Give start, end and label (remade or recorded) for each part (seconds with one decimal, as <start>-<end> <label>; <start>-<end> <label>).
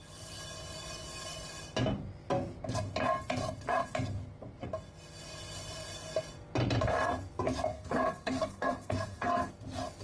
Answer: 0.0-7.7 recorded; 7.7-9.5 remade; 9.5-10.0 recorded